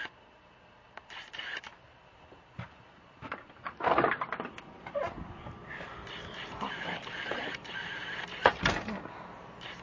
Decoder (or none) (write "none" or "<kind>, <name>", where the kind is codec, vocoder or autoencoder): vocoder, BigVGAN v2